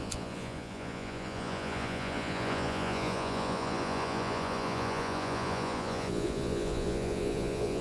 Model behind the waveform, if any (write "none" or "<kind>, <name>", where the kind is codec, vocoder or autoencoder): vocoder, Vocos